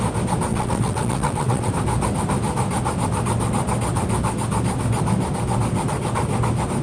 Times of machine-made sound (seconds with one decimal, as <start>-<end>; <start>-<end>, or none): 0.5-1.7